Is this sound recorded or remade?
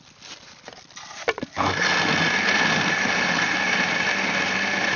remade